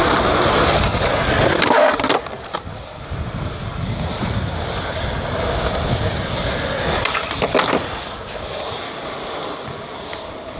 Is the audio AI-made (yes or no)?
no